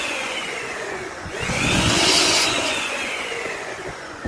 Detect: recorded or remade remade